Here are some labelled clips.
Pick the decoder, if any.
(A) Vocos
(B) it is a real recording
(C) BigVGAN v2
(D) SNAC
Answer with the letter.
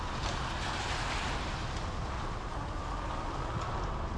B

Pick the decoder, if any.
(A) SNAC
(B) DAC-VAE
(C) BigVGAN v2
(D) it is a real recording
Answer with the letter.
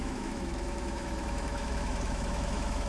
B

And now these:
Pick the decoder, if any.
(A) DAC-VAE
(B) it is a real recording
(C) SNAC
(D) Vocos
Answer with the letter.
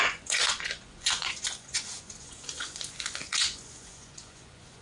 D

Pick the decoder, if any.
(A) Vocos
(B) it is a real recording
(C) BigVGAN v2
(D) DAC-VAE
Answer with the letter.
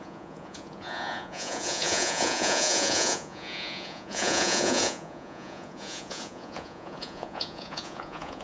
A